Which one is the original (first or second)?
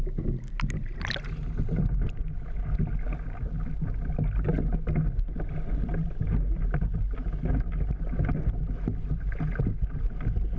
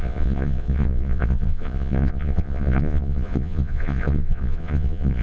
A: first